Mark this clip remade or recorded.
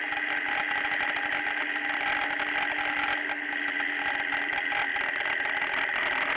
recorded